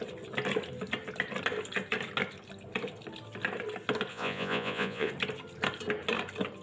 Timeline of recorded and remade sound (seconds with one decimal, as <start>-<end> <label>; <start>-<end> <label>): 0.0-4.1 recorded; 4.1-5.1 remade; 5.1-6.6 recorded